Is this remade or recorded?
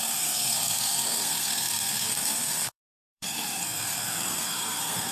remade